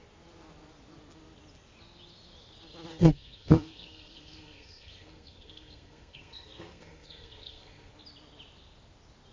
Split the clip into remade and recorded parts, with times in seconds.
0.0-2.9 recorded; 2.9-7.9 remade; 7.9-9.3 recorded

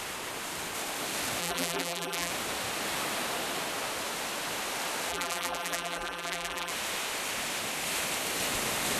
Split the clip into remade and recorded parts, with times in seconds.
0.0-1.4 recorded; 1.4-2.3 remade; 2.3-5.1 recorded; 5.1-6.7 remade; 6.7-9.0 recorded

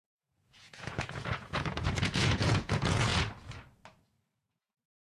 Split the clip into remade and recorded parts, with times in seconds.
0.0-3.1 remade; 3.1-4.5 recorded; 4.5-5.1 remade

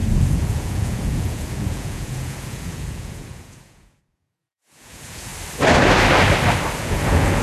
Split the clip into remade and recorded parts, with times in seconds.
0.0-5.3 remade; 5.3-6.8 recorded; 6.8-7.4 remade